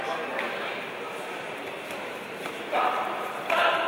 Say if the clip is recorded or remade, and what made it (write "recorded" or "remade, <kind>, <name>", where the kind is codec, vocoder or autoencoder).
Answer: recorded